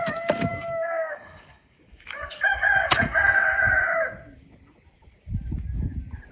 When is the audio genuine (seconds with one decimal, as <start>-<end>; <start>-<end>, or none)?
0.0-0.5; 3.8-6.3